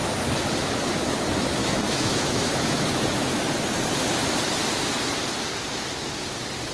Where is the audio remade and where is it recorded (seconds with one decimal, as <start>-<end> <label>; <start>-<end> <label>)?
0.0-1.6 recorded; 1.6-3.4 remade; 3.4-6.7 recorded